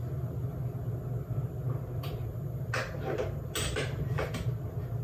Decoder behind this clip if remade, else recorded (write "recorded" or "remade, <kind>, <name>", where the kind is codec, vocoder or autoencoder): recorded